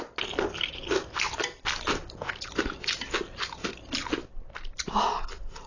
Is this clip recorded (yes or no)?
yes